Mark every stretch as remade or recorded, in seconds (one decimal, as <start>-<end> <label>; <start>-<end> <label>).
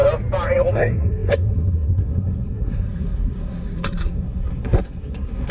0.0-0.7 recorded; 0.7-5.5 remade